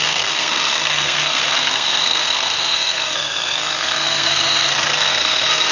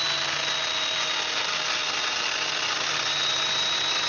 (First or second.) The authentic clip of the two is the second